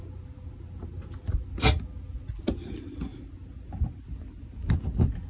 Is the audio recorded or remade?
recorded